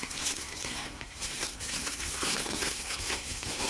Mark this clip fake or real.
fake